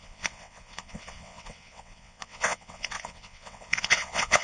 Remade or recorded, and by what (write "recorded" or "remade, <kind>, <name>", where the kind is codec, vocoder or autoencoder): remade, vocoder, WaveNeXt